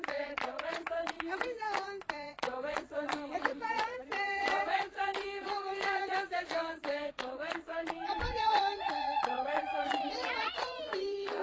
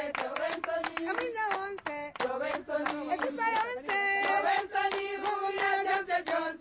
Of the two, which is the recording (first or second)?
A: second